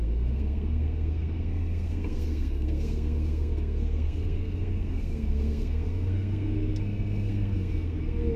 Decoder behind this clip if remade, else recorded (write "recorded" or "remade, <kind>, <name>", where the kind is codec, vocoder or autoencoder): remade, codec, SNAC